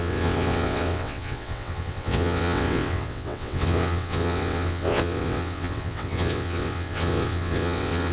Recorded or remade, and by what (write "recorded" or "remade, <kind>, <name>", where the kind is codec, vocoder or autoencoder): remade, vocoder, WaveNeXt